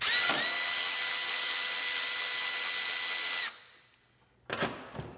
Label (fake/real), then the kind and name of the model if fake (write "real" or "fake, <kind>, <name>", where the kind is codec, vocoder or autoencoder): real